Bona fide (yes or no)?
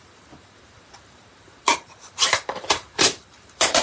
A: no